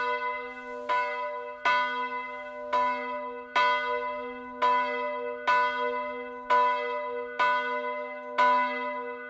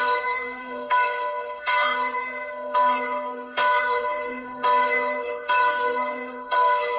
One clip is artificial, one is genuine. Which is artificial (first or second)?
second